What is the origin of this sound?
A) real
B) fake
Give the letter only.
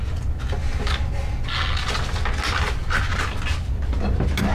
A